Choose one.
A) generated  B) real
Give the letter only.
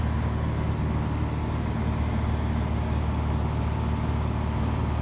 B